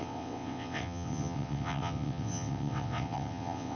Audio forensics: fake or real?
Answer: fake